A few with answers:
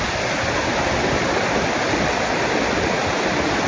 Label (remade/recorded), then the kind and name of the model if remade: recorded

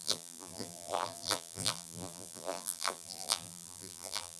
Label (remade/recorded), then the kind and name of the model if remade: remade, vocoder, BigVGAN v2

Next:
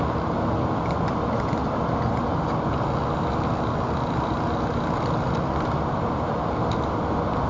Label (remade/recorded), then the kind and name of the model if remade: recorded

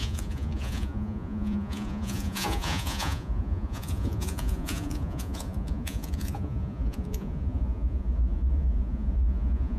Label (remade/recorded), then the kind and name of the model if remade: remade, vocoder, Vocos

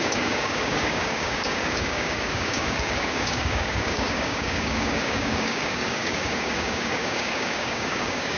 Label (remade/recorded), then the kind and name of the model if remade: remade, codec, DAC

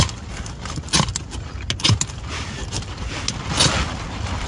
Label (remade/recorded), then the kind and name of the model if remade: recorded